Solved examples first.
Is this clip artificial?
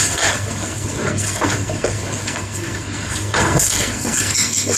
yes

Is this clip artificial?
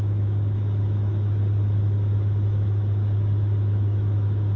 yes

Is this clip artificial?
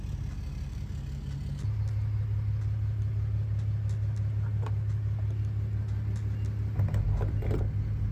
no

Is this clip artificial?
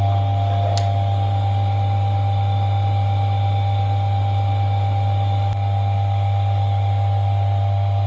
no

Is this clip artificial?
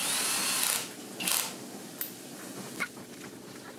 no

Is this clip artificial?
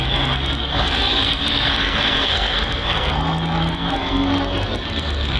yes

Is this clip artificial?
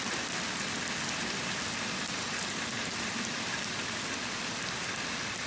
no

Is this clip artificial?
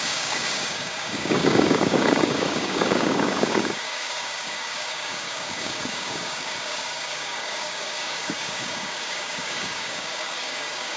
yes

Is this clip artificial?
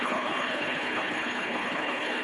yes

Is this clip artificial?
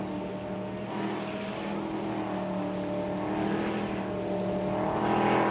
no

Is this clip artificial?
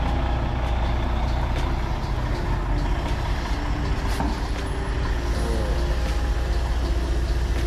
no